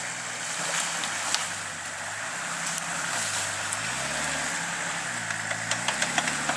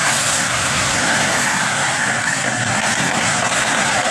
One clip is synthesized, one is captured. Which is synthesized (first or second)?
second